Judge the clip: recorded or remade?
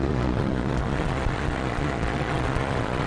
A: remade